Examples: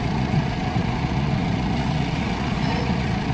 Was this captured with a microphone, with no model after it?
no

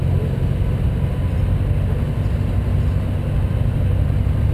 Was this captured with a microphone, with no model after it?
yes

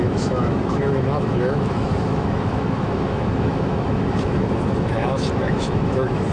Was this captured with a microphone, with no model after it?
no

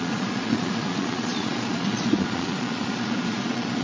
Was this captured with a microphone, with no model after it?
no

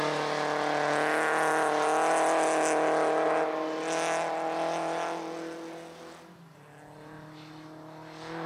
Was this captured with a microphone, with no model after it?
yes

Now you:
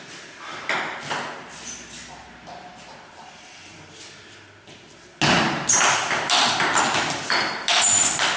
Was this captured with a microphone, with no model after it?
yes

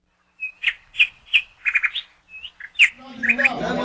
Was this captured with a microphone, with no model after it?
yes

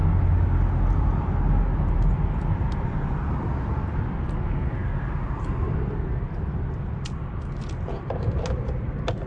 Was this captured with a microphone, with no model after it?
yes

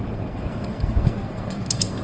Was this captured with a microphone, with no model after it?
no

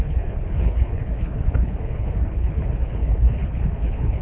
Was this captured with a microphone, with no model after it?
no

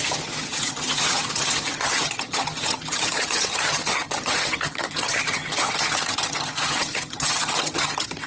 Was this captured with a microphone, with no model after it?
no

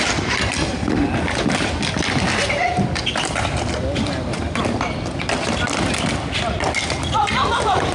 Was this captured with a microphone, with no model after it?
yes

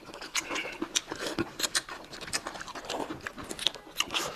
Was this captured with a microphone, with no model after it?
yes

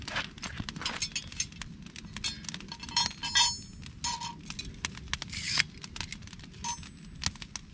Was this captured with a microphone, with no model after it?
yes